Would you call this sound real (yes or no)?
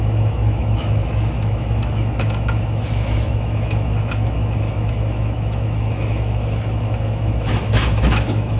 no